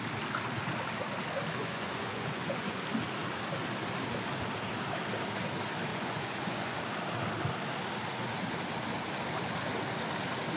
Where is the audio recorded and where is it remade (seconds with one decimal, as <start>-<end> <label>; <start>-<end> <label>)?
0.0-1.6 recorded; 1.6-2.8 remade; 2.8-5.9 recorded; 5.9-6.8 remade; 6.8-10.6 recorded